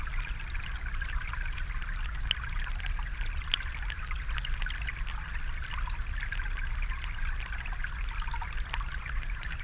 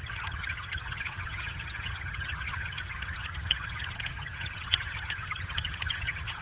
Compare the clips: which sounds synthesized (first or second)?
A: second